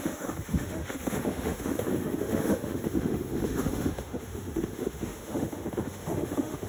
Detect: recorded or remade remade